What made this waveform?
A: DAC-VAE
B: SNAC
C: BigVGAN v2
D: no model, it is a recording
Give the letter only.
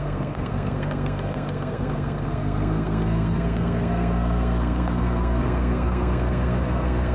B